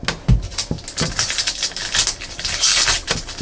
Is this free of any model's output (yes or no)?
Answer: yes